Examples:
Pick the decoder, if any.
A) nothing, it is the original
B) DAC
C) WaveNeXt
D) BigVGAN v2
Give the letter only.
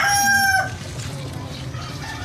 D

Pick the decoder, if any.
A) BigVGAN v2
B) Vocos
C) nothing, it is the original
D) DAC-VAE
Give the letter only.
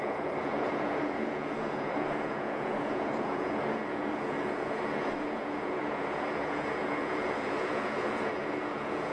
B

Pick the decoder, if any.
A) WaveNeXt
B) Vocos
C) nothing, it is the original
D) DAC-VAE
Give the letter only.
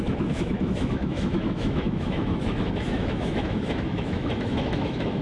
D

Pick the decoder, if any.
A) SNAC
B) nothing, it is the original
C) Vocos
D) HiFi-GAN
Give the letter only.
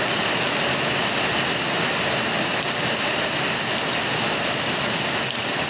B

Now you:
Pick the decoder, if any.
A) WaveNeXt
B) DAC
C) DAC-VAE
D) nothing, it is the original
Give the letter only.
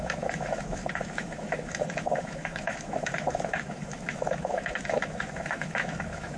C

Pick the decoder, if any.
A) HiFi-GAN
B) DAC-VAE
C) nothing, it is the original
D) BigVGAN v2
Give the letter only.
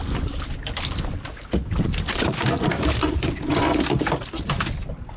C